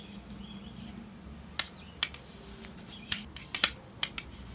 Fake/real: real